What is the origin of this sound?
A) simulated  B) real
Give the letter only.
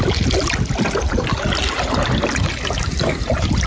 B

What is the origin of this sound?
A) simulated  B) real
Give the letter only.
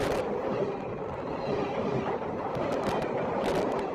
B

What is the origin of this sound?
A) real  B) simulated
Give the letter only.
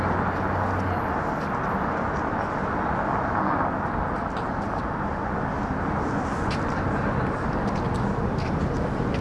A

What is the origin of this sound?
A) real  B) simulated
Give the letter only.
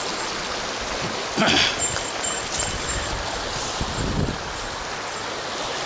A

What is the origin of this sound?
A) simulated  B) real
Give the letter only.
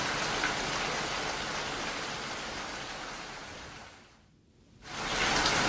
B